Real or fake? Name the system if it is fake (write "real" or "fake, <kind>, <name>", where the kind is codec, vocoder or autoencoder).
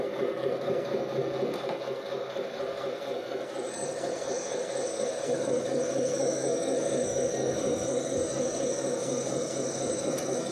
fake, codec, SNAC